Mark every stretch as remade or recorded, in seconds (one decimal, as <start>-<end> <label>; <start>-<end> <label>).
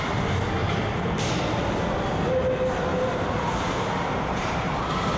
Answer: 0.0-0.6 recorded; 0.6-1.1 remade; 1.1-2.9 recorded; 2.9-4.7 remade; 4.7-5.2 recorded